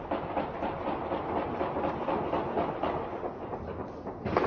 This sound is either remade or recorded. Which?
recorded